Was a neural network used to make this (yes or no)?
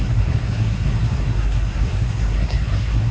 yes